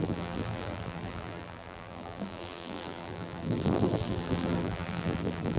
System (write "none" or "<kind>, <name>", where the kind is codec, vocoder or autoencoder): vocoder, BigVGAN v2